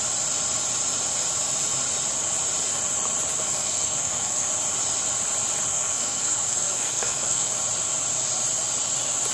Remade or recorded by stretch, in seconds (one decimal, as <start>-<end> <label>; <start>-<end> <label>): 0.0-3.4 recorded; 3.4-4.5 remade; 4.5-5.7 recorded; 5.7-7.5 remade; 7.5-9.3 recorded